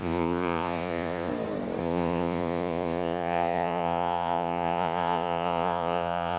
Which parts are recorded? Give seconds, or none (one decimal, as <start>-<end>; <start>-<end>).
1.3-1.8